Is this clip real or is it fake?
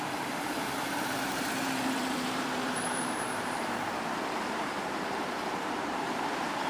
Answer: fake